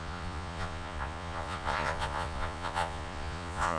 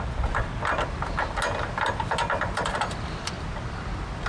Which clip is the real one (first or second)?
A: second